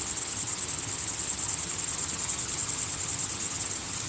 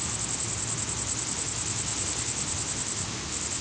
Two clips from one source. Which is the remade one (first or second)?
first